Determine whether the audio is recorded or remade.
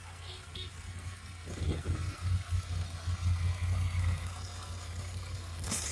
remade